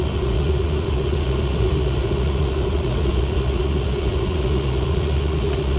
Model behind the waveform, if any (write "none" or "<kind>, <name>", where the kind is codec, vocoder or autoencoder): vocoder, Vocos